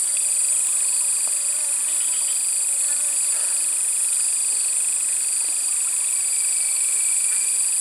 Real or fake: real